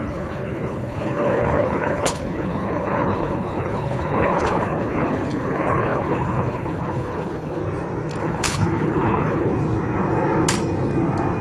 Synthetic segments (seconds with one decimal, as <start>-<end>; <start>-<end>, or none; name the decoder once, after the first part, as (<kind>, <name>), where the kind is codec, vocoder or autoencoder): 0.0-7.6 (codec, HILCodec); 8.2-9.5